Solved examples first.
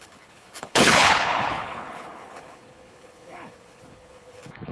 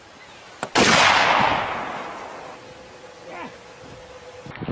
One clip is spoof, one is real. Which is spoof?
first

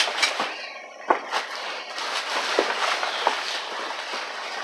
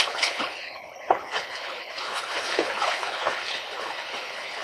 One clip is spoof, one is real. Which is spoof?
second